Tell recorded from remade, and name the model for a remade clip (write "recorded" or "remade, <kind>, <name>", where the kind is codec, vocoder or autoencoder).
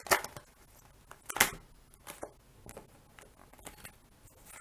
recorded